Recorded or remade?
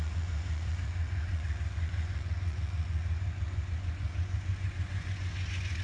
remade